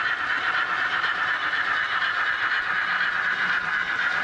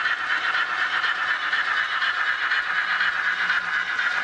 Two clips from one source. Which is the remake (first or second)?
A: first